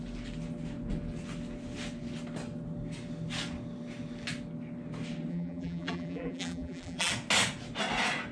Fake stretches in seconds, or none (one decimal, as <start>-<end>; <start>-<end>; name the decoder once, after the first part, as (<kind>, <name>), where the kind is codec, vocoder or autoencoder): 5.3-7.1 (vocoder, BigVGAN v2)